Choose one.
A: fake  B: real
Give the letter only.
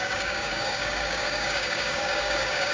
A